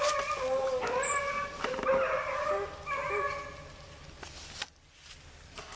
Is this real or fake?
real